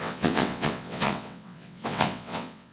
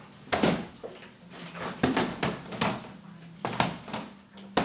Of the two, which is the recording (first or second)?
second